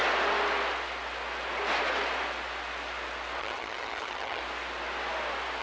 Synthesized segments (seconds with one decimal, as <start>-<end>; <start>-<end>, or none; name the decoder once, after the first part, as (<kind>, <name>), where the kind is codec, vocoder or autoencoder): 3.4-4.4 (vocoder, HiFi-GAN)